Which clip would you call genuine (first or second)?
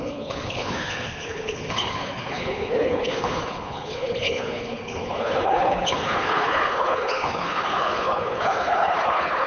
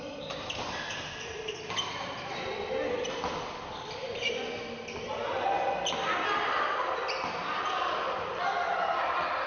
second